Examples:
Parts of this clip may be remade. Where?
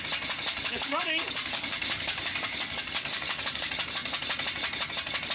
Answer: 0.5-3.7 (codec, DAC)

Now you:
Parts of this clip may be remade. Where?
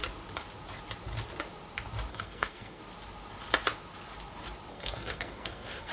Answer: 2.1-2.8 (codec, SNAC); 4.7-5.9